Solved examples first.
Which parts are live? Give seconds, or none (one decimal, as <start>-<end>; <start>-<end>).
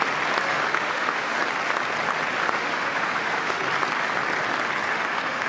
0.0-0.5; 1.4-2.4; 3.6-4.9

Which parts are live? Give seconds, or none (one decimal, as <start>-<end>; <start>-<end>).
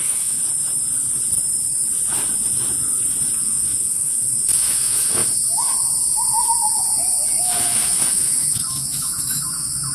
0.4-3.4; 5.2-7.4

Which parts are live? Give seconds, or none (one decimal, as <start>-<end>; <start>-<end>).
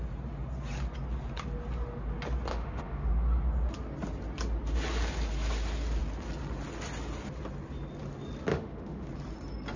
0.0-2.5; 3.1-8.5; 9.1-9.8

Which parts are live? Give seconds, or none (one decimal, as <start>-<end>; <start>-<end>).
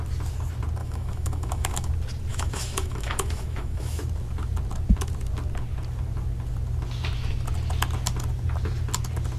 0.0-0.8; 1.9-2.3; 4.0-9.4